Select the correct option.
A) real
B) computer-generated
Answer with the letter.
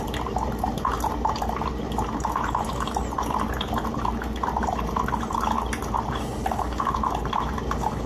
B